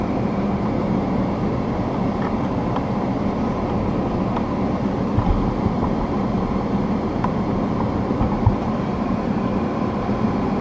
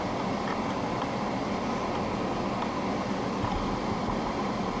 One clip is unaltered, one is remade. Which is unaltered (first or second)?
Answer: second